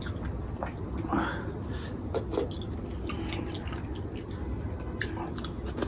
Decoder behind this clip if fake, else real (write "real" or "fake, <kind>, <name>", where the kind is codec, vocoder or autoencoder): real